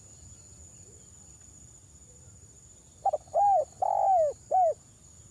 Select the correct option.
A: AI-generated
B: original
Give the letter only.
B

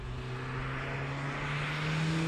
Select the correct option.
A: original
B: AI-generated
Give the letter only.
A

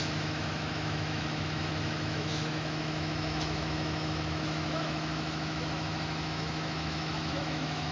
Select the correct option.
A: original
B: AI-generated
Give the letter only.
B